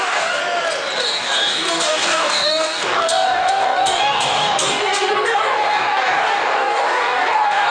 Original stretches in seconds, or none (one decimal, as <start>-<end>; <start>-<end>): 0.4-1.0